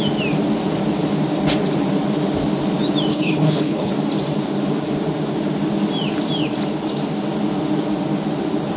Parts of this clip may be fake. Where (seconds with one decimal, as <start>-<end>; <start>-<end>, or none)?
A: 3.1-3.9